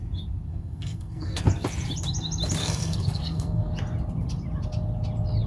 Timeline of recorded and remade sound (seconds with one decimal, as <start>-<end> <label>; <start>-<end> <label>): 0.0-0.5 recorded; 0.5-1.4 remade; 1.4-2.6 recorded; 2.6-3.7 remade; 3.7-5.5 recorded